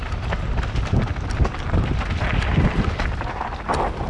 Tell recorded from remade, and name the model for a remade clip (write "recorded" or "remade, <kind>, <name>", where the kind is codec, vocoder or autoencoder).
recorded